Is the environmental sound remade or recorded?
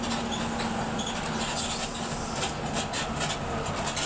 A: recorded